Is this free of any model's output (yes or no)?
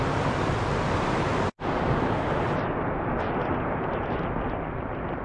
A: yes